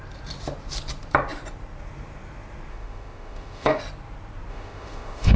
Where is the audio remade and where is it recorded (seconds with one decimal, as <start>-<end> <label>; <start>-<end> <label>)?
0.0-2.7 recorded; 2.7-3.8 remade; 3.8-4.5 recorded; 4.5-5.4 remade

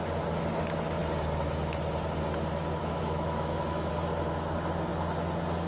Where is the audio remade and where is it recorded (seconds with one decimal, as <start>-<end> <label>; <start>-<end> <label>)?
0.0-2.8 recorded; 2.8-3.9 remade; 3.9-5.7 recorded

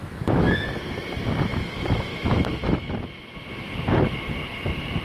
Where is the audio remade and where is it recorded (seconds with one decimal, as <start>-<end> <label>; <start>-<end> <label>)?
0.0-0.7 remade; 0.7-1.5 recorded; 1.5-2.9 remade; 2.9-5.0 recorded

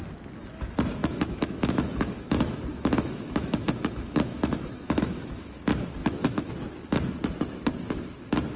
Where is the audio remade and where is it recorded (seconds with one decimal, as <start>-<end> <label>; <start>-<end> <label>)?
0.0-1.0 recorded; 1.0-5.6 remade; 5.6-6.0 recorded; 6.0-6.5 remade; 6.5-8.6 recorded

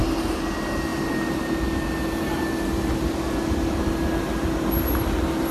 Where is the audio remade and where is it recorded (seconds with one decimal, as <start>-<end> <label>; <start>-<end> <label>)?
0.0-5.5 recorded

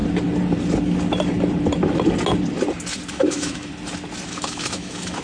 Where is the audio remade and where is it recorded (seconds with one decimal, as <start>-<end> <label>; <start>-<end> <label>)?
0.0-3.1 recorded; 3.1-3.7 remade; 3.7-4.3 recorded; 4.3-5.2 remade

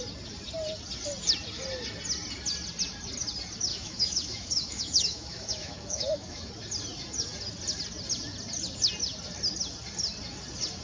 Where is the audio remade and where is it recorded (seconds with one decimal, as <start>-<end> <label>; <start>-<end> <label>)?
0.0-3.7 recorded; 3.7-6.5 remade; 6.5-10.8 recorded